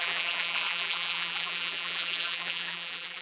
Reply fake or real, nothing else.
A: fake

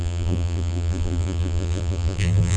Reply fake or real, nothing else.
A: fake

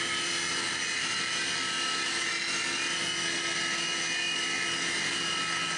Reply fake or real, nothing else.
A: real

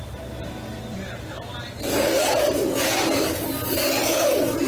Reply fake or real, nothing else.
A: real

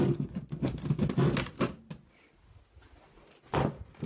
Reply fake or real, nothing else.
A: real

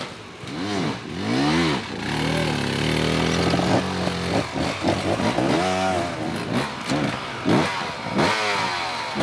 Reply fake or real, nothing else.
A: real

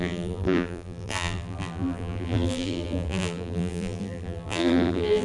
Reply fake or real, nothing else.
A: fake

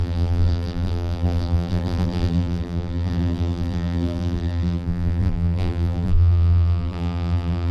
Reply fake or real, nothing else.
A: fake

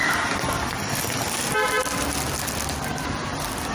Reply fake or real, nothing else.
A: real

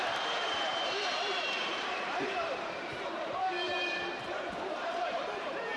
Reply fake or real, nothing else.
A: fake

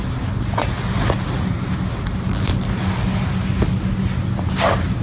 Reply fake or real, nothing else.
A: real